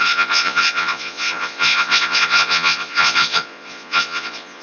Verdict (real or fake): fake